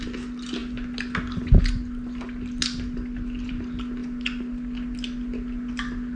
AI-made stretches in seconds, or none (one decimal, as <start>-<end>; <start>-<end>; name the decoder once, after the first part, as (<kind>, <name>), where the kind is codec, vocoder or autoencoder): none